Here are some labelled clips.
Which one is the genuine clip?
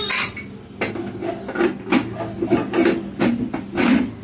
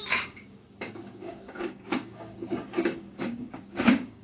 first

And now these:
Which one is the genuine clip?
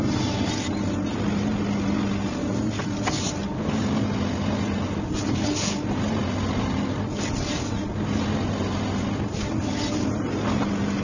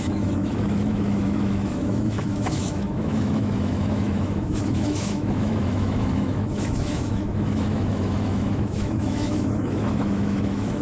first